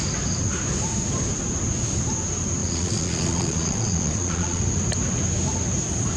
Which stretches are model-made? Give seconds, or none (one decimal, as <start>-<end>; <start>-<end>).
2.6-4.6